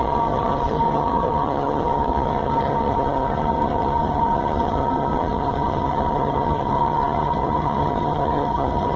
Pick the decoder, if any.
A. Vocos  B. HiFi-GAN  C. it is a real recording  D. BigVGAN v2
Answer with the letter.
B